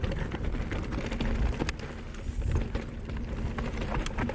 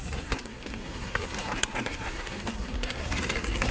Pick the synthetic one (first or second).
second